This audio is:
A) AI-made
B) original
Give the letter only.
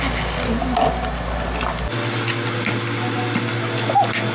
B